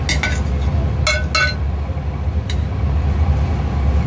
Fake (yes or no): no